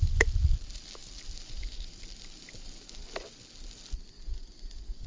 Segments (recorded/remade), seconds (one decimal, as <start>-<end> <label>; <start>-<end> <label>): 0.0-5.1 recorded